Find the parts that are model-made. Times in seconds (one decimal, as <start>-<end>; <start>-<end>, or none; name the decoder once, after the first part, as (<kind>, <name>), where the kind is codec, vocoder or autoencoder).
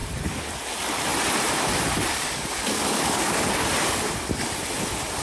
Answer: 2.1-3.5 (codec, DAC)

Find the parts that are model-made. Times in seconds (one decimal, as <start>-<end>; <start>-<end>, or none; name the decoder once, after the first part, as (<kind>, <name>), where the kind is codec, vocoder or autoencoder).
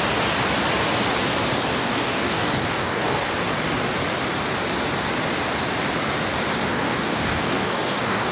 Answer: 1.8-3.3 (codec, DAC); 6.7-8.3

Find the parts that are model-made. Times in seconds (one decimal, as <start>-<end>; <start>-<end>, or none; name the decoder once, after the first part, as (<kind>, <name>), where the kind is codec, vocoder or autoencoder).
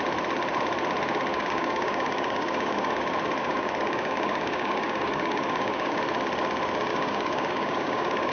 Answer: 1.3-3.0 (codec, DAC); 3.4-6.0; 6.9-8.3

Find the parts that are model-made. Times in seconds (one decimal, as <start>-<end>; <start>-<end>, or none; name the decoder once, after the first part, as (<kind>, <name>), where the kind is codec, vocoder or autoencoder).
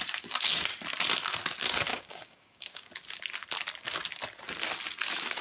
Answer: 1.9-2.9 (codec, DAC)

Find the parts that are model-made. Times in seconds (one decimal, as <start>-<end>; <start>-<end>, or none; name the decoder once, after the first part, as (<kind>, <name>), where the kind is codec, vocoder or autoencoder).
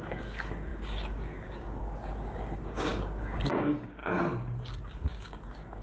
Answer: 0.0-4.0 (codec, DAC); 4.8-5.8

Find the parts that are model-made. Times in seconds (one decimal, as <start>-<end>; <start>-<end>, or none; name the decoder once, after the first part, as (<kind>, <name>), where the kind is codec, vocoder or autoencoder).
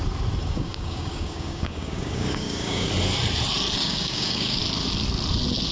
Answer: 0.4-2.9 (codec, DAC); 3.8-4.6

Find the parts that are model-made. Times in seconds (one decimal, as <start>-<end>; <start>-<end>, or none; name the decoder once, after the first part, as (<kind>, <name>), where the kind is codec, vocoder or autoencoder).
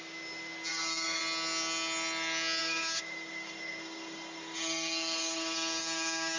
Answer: 0.7-1.2 (codec, DAC); 2.6-6.4